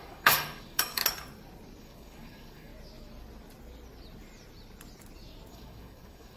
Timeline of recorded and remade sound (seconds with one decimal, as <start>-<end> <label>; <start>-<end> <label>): 0.0-1.0 remade; 1.0-1.8 recorded; 1.8-2.7 remade; 2.7-5.5 recorded; 5.5-6.4 remade